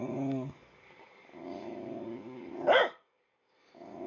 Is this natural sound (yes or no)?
no